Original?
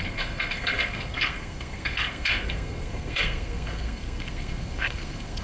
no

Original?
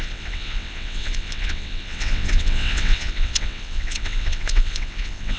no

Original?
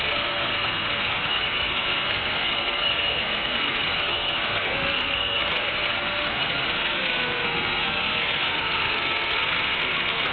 no